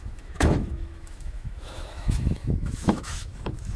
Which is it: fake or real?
fake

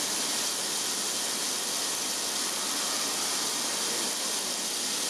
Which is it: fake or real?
real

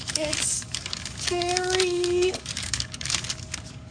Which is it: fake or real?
fake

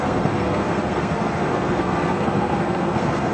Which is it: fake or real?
fake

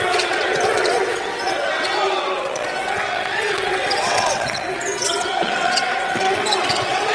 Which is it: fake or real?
fake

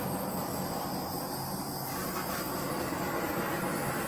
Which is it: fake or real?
real